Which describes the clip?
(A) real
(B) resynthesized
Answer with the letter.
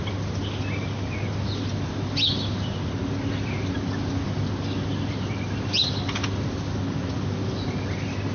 A